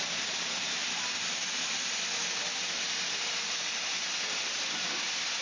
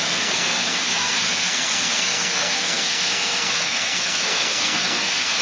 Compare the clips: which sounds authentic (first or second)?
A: first